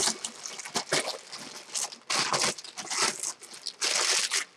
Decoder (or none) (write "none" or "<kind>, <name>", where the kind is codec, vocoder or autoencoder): none